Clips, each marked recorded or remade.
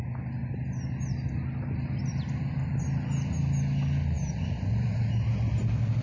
recorded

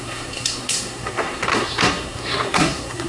remade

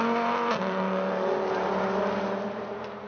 recorded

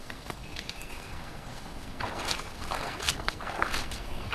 remade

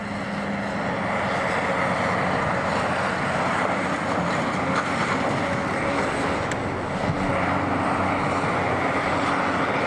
recorded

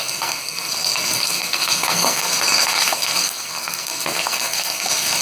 remade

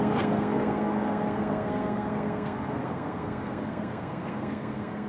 remade